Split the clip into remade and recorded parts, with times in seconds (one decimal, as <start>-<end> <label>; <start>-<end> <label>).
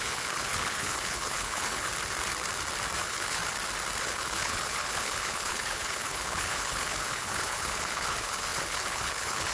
0.0-1.9 remade; 1.9-3.0 recorded; 3.0-3.4 remade; 3.4-4.0 recorded; 4.0-9.5 remade